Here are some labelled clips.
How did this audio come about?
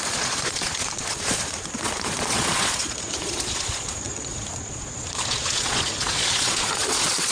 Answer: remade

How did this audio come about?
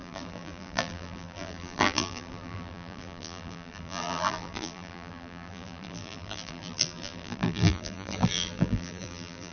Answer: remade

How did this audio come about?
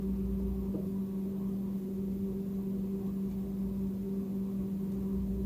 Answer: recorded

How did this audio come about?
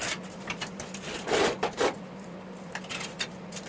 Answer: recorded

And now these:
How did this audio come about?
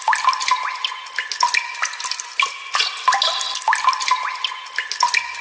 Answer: recorded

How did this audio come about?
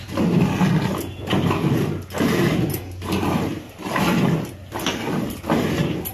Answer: recorded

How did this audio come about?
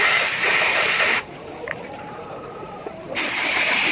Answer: remade